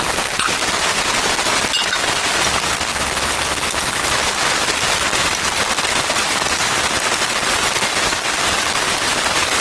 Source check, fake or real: real